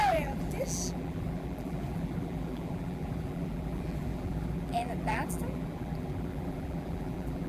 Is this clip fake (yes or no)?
yes